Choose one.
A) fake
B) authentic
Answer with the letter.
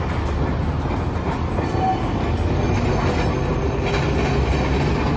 B